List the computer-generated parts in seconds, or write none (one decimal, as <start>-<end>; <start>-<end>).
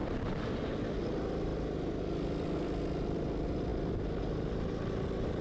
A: none